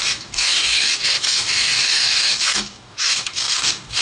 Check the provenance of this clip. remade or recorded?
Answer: remade